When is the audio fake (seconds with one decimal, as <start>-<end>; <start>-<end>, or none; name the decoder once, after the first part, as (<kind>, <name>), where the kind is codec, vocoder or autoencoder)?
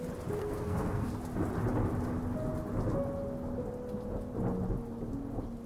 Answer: 0.4-1.1 (codec, SNAC)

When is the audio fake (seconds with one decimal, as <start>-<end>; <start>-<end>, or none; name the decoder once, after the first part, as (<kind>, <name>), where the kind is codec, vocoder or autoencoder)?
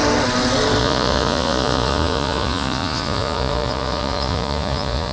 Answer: 0.8-5.1 (vocoder, Vocos)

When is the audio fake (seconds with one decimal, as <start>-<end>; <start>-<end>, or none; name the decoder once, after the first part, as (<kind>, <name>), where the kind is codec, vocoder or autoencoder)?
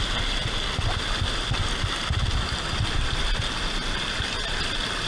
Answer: none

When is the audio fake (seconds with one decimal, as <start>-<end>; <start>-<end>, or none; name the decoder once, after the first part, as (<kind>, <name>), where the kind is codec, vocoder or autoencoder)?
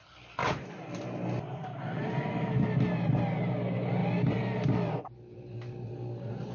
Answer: none